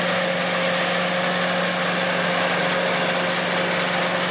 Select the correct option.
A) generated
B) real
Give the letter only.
B